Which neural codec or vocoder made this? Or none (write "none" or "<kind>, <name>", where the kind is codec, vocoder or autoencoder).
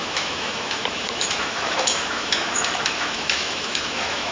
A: autoencoder, DAC-VAE